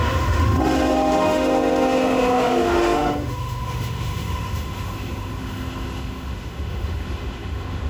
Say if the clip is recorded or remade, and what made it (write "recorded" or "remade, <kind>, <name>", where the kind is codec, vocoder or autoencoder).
remade, autoencoder, DAC-VAE